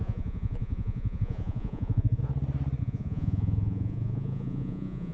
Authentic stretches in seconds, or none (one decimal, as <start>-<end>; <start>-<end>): 2.2-2.8